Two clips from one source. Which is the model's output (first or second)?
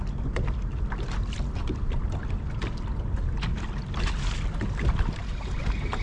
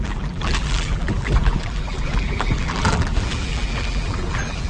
second